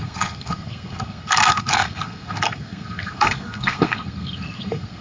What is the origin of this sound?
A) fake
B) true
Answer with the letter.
A